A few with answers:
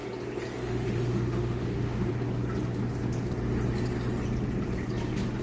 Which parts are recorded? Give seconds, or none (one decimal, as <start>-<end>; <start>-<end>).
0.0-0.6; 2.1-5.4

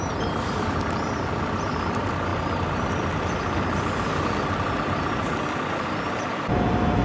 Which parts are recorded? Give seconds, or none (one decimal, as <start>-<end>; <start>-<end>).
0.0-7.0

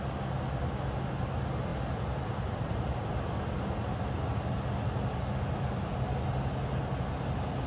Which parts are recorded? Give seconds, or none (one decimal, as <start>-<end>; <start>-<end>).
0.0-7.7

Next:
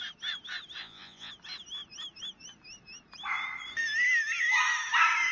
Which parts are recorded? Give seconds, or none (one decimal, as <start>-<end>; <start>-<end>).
0.0-0.8; 1.3-5.3

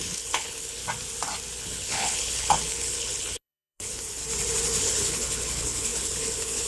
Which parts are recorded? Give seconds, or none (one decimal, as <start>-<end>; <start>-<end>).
0.8-1.6; 4.2-4.8

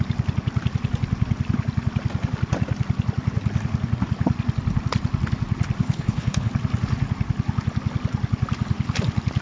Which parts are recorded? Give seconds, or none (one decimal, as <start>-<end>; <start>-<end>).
0.0-5.8; 6.5-9.4